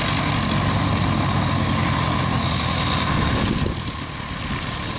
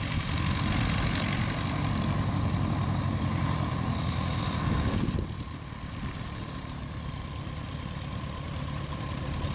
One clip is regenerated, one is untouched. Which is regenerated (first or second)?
second